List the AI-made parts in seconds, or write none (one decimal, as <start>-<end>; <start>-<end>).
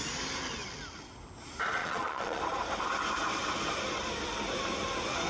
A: 1.8-2.4